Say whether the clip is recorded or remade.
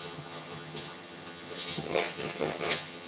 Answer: remade